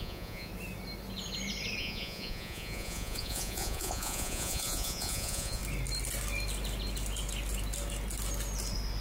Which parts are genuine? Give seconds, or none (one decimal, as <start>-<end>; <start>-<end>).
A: 0.5-1.8; 5.6-9.0